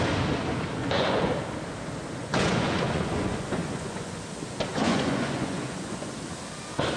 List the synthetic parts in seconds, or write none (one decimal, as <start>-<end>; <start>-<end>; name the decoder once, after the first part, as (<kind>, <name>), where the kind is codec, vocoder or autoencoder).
0.8-1.3 (vocoder, Vocos); 2.2-4.2; 4.7-6.1